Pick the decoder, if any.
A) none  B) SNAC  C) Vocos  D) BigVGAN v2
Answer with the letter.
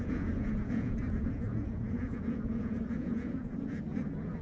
C